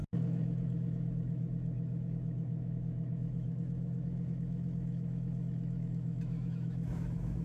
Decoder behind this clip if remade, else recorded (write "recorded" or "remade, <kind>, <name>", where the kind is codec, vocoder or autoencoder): remade, autoencoder, DAC-VAE